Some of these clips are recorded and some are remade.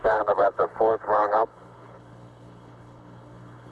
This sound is remade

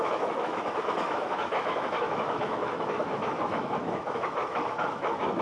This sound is remade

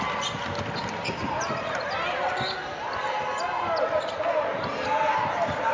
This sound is recorded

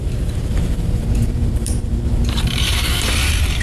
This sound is remade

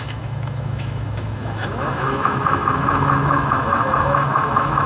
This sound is remade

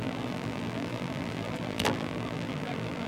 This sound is remade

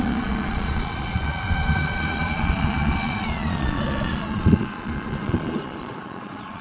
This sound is remade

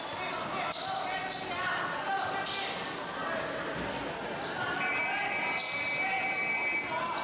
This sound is recorded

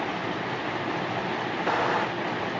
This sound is recorded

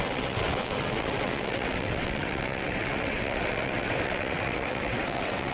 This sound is remade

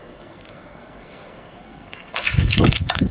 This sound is remade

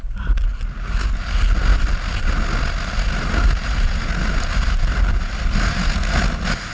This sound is recorded